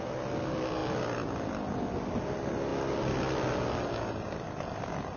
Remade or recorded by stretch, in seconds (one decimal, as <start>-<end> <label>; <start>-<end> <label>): 0.0-5.2 recorded